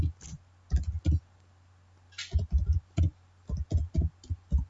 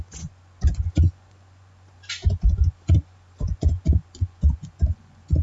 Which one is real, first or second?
first